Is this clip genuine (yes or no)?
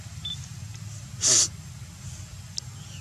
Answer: yes